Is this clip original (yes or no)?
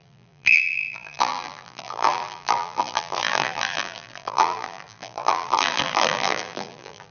no